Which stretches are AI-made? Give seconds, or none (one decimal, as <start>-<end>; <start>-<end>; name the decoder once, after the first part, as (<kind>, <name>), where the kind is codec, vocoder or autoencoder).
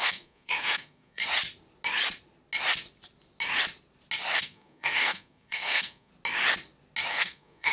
0.0-1.2 (codec, SNAC); 4.4-6.1; 7.1-7.7